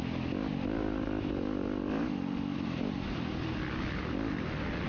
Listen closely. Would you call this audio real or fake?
real